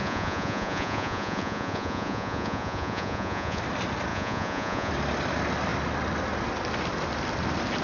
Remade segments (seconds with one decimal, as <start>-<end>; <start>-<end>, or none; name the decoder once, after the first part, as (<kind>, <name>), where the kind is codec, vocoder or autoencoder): 0.0-3.6 (vocoder, Vocos); 4.1-4.9